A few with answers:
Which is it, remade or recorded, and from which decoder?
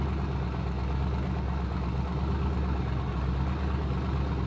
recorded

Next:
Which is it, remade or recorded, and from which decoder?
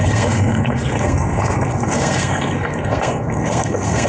remade, codec, SNAC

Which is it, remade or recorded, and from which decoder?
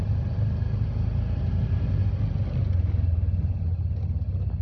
recorded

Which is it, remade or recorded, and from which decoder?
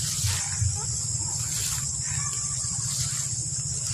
recorded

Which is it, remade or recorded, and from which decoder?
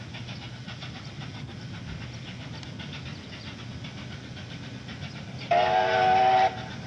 recorded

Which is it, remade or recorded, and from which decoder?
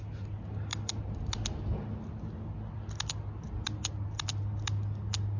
recorded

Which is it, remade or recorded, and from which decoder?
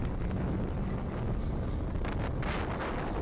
recorded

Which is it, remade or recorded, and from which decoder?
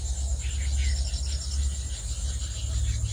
recorded